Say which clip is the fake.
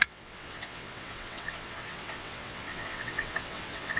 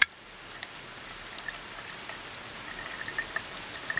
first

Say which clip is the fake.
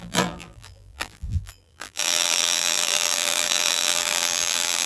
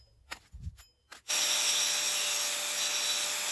first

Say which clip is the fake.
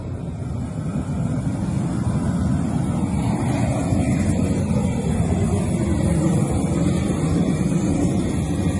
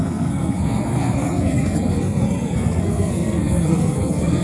second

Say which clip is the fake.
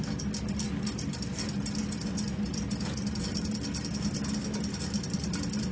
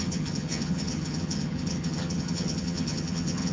second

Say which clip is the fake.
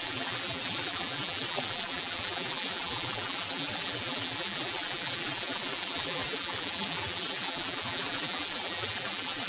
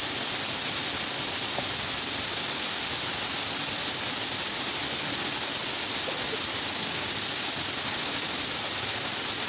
first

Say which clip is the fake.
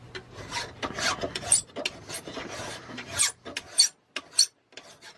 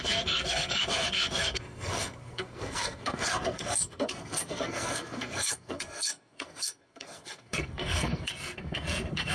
second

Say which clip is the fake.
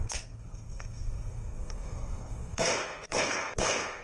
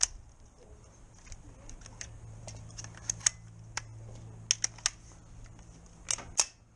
first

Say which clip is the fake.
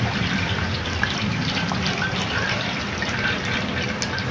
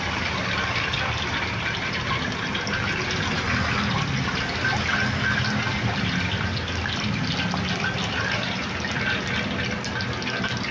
first